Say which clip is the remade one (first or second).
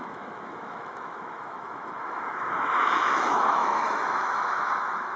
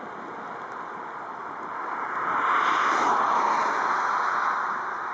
first